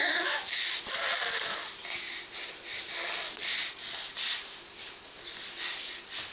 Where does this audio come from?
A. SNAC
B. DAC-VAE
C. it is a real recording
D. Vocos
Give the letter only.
C